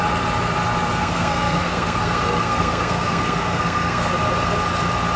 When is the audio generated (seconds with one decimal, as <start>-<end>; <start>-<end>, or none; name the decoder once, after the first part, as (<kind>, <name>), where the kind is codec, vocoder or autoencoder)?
1.0-4.1 (codec, SNAC)